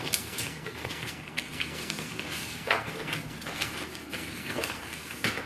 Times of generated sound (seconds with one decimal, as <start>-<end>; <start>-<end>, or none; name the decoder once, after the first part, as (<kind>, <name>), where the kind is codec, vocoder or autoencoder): 0.0-5.5 (codec, SNAC)